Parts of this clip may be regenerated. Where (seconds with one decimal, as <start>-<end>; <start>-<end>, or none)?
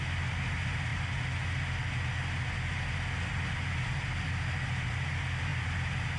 none